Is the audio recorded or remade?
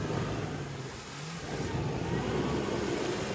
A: recorded